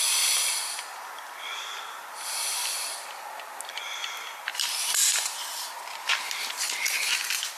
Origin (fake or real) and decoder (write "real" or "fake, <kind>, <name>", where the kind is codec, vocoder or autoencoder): real